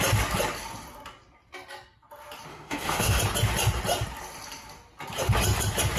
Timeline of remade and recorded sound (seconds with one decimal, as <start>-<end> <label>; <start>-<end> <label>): 0.0-2.5 recorded; 2.5-3.2 remade; 3.2-6.0 recorded

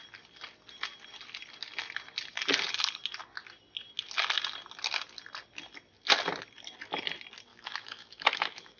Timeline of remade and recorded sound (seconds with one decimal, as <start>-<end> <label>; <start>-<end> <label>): 0.0-7.5 recorded; 7.5-8.8 remade

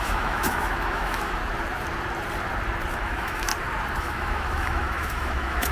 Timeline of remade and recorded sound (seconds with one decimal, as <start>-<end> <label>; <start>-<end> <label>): 0.0-1.4 remade; 1.4-2.9 recorded; 2.9-3.5 remade; 3.5-4.0 recorded; 4.0-5.7 remade

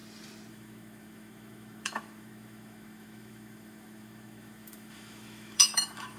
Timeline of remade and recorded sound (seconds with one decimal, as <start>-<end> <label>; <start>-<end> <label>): 0.0-0.5 recorded; 0.5-6.2 remade

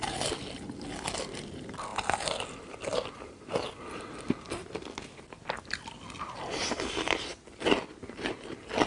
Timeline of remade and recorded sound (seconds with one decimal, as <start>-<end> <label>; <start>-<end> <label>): 0.0-8.9 recorded

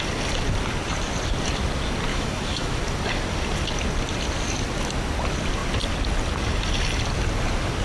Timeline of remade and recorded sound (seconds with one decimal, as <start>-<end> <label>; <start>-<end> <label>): 0.0-2.1 recorded; 2.1-2.8 remade; 2.8-7.8 recorded

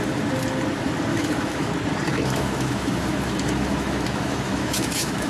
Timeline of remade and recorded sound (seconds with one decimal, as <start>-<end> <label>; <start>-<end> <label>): 0.0-1.1 recorded; 1.1-1.7 remade; 1.7-2.1 recorded; 2.1-5.3 remade

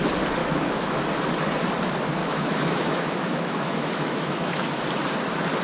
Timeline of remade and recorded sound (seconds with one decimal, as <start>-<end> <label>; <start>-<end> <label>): 0.0-0.4 recorded; 0.4-1.0 remade; 1.0-2.2 recorded; 2.2-4.8 remade; 4.8-5.6 recorded